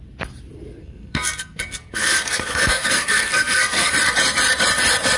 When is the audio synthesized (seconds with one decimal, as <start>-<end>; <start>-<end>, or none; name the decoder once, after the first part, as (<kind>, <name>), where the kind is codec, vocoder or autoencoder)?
0.8-3.9 (codec, SNAC)